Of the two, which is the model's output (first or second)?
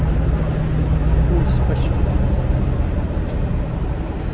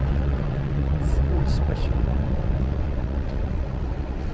second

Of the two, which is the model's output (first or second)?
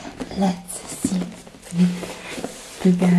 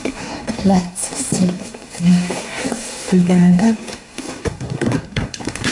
second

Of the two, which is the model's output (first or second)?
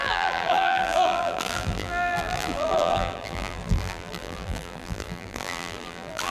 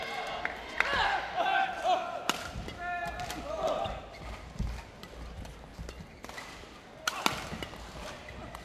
first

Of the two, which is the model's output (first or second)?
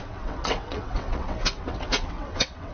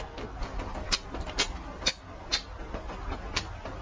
first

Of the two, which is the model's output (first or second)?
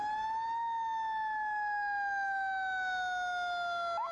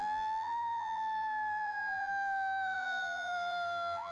second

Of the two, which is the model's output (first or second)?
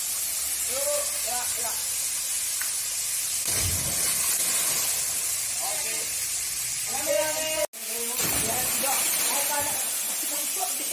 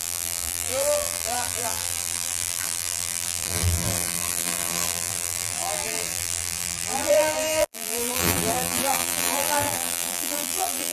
second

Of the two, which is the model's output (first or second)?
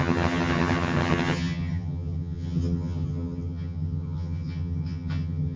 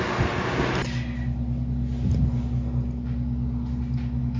first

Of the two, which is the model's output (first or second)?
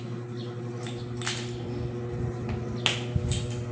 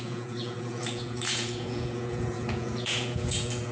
second